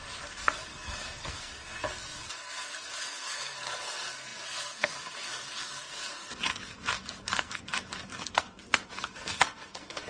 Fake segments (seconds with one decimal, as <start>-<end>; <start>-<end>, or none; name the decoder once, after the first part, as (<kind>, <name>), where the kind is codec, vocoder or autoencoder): 0.0-10.1 (codec, SNAC)